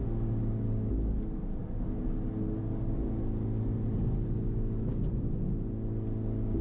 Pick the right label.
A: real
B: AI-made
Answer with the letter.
A